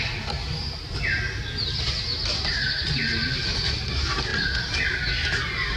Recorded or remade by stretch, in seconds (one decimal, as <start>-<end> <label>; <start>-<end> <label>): 0.0-5.8 recorded